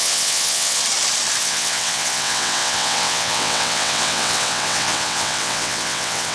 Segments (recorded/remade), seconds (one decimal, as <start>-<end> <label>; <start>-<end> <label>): 0.0-0.8 remade; 0.8-1.4 recorded; 1.4-6.3 remade